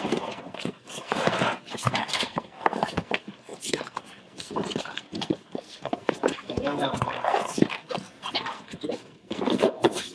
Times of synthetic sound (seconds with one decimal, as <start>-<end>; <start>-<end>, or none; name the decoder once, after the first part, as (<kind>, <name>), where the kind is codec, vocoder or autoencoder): 0.0-10.1 (codec, SNAC)